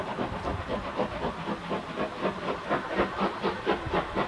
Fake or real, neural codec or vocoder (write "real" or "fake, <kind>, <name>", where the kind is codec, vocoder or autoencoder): real